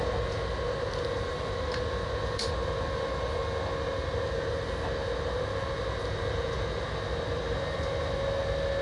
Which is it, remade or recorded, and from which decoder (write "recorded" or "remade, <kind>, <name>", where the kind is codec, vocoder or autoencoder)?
recorded